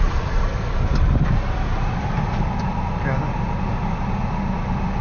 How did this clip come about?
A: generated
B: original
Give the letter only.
B